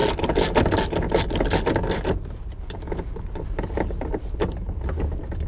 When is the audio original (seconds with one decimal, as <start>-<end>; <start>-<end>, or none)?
0.0-5.5